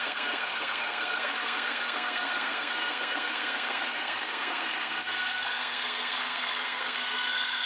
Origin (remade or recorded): remade